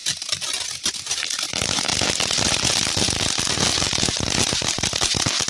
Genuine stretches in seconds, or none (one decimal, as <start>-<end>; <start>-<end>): 0.0-5.5